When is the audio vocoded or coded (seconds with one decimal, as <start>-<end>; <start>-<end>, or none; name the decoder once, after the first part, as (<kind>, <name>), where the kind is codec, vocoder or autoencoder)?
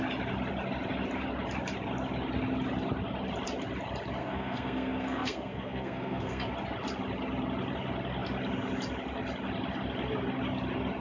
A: 4.2-6.5 (codec, SNAC)